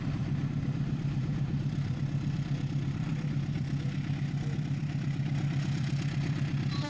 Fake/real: fake